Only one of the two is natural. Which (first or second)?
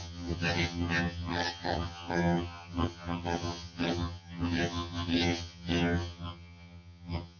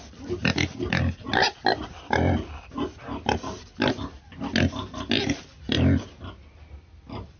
second